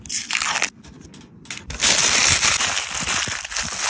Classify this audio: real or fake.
real